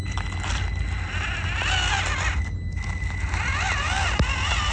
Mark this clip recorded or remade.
recorded